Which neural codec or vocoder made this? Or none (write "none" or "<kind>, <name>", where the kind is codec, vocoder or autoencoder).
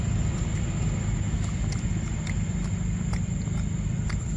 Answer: none